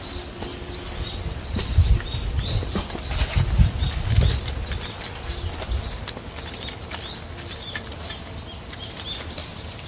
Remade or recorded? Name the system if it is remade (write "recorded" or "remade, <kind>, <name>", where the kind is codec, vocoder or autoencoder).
recorded